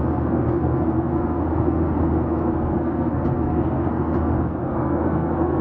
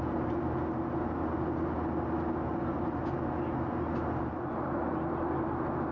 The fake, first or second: first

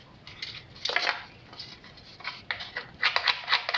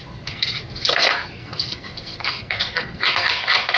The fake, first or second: second